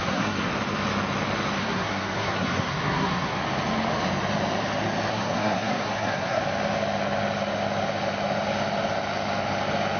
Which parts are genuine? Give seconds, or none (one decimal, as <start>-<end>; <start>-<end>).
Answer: 0.5-1.6; 3.4-5.1; 6.4-10.0